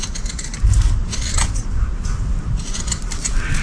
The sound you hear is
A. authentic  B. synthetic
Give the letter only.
A